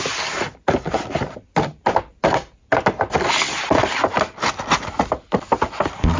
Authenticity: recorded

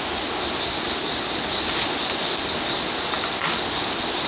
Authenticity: recorded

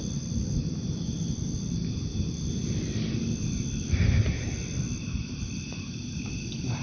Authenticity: recorded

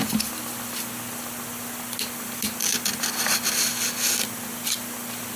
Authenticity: recorded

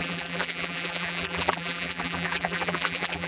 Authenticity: remade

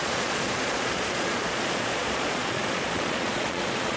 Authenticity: remade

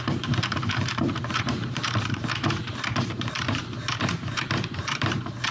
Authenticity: remade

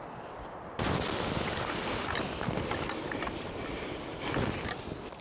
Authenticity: recorded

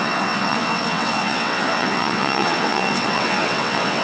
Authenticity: remade